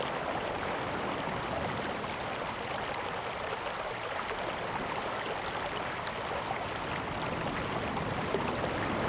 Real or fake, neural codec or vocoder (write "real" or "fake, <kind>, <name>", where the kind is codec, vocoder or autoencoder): real